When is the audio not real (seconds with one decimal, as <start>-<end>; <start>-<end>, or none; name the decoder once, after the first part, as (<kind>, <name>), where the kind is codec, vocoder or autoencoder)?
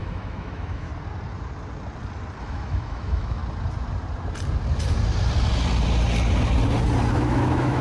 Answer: 0.0-0.9 (autoencoder, DAC-VAE); 2.4-3.4; 7.1-7.8